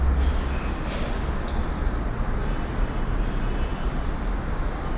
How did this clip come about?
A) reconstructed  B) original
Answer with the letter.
B